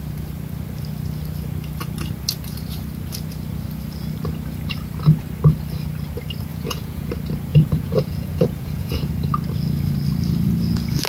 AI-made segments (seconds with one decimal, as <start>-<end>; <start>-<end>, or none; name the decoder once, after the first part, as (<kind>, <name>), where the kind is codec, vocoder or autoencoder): 6.5-7.1 (vocoder, Vocos); 7.5-9.1